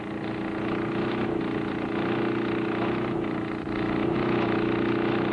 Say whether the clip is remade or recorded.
recorded